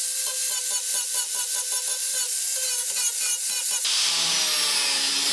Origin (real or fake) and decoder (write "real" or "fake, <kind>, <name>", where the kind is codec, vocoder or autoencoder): real